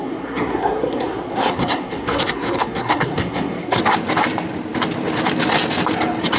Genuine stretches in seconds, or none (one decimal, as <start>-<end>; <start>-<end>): 3.8-6.4